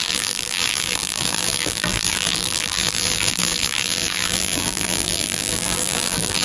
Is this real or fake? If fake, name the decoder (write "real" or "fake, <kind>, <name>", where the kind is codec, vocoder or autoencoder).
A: fake, vocoder, BigVGAN v2